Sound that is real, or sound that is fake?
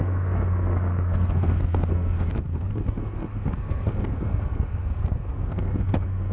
fake